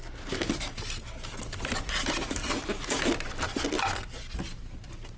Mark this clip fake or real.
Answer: real